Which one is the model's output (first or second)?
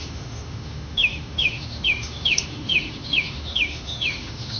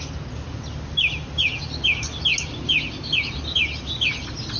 first